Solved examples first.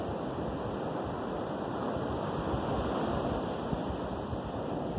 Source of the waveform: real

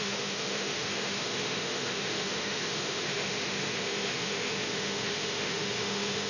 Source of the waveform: fake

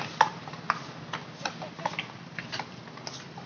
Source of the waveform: real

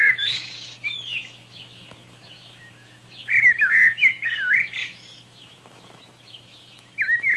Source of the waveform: fake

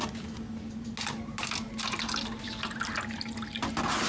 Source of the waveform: real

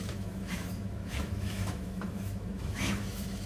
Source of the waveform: fake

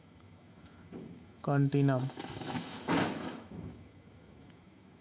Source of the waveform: fake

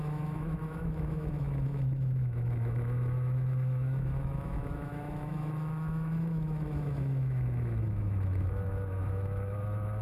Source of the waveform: fake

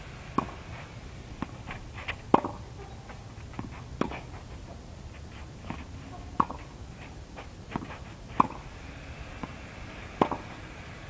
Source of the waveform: real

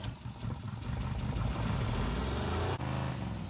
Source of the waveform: real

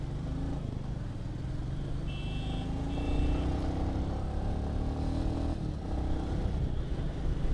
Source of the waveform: real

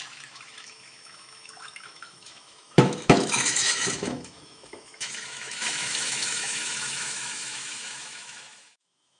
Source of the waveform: fake